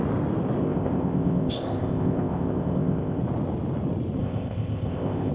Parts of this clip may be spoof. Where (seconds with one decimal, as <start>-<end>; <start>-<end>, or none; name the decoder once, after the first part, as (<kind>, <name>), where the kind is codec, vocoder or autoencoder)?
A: 0.6-3.2 (codec, ZipCodec); 4.2-5.3